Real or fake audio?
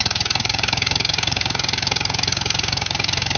fake